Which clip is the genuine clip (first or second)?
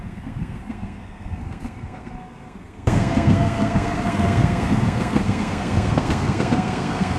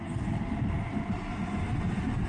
second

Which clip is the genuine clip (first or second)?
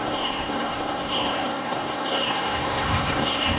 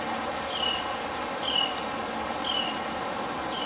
second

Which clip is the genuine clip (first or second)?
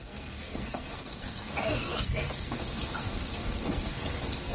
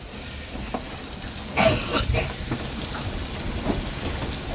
second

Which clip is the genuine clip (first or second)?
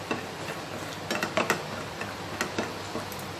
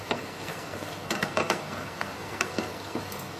first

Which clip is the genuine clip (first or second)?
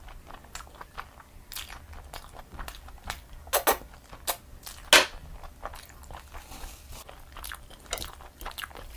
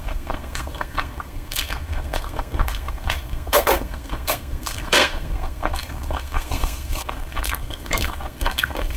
first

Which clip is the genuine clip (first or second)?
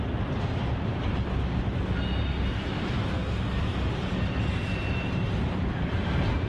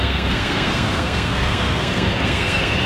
first